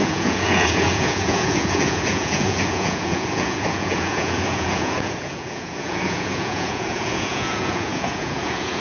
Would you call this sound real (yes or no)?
no